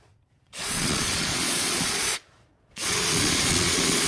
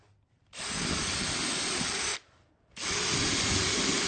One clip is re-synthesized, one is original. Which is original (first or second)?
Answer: second